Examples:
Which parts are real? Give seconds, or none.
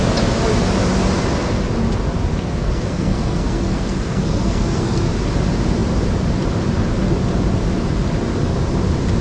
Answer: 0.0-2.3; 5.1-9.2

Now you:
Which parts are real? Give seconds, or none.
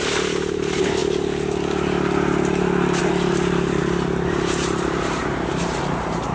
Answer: 1.0-3.0; 3.8-4.3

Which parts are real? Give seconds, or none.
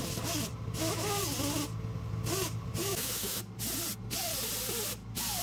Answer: 0.0-2.8; 3.4-5.4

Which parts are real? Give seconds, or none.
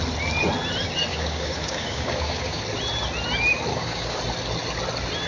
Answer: 0.0-1.1; 2.6-3.7; 4.2-5.3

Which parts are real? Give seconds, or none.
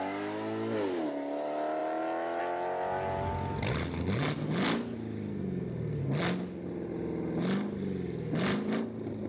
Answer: 0.0-5.3; 6.0-9.3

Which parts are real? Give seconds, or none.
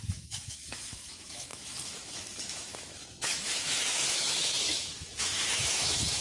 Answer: none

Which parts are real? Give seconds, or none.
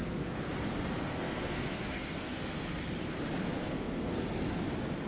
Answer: 0.5-1.1; 2.9-3.6; 4.5-5.1